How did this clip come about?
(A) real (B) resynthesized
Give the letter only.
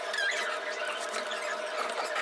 A